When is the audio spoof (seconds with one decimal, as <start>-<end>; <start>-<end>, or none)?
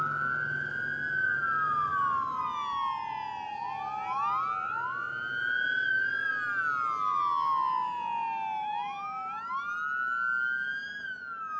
none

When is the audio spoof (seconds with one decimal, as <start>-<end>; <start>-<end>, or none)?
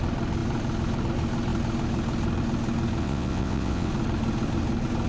3.0-3.9